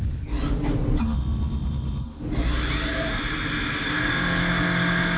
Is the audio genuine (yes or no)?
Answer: yes